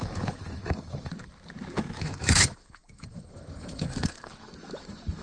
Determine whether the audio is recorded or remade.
remade